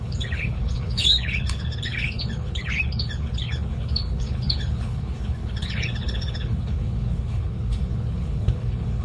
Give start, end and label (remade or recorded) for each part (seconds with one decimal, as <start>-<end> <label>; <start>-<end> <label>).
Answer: 0.0-9.0 remade